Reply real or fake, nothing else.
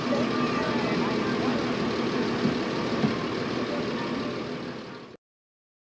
real